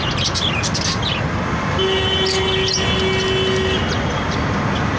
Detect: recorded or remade recorded